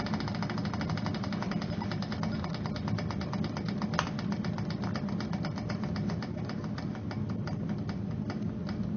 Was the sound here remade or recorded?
recorded